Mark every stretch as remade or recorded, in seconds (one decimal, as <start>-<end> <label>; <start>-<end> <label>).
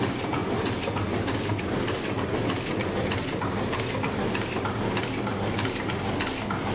0.0-6.7 recorded